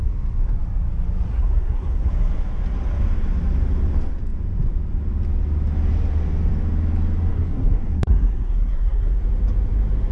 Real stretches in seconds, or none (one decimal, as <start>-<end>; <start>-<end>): 0.0-1.3; 2.1-7.3; 9.2-10.1